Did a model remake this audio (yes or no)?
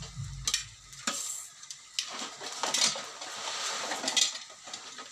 no